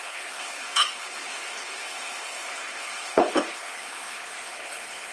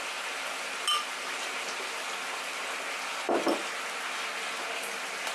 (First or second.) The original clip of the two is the second